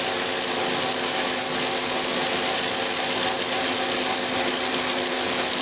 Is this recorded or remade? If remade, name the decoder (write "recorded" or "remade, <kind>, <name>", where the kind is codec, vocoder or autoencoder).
recorded